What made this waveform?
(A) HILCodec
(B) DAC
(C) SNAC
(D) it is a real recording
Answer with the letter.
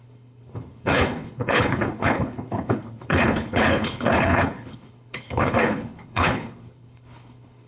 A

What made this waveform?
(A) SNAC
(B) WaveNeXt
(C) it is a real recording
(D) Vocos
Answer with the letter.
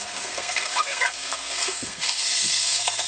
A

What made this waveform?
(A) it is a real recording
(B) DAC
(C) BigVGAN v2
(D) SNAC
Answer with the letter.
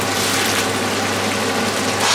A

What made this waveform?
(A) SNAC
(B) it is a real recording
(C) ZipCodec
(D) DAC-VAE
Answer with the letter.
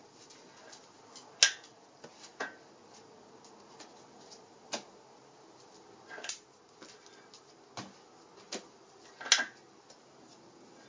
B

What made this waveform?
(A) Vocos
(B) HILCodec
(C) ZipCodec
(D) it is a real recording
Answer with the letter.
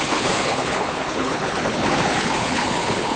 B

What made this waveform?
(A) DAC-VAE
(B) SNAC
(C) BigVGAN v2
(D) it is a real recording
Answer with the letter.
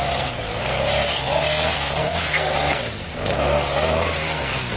B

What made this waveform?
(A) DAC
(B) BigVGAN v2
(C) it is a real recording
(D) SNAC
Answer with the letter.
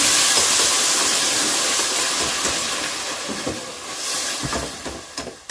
C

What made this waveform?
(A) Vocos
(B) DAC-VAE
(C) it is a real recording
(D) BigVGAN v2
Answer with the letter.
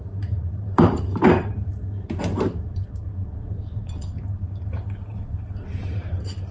D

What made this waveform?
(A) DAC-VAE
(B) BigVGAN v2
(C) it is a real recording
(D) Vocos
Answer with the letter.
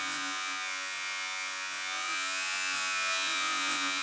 D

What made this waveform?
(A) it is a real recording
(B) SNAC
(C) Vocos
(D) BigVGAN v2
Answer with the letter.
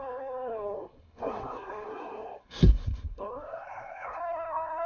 B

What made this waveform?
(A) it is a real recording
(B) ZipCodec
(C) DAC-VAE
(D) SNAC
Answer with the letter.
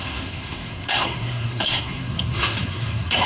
D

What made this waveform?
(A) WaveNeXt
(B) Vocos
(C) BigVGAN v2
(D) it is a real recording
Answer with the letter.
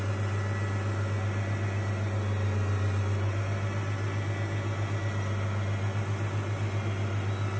D